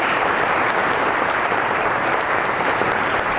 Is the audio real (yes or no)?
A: no